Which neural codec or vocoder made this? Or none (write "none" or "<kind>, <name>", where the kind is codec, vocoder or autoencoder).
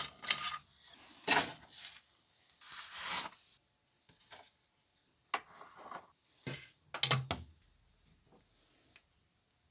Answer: none